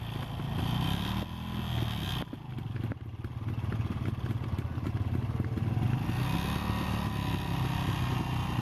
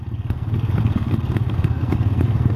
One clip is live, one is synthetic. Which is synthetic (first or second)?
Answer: second